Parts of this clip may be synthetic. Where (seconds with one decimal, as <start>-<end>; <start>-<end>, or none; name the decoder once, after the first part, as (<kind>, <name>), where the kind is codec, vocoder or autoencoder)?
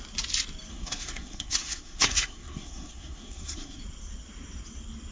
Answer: 0.7-3.8 (codec, SNAC)